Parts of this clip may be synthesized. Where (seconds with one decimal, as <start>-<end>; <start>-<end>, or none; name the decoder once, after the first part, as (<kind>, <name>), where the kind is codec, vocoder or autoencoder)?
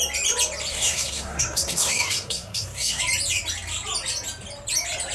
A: 0.7-3.0 (codec, SNAC)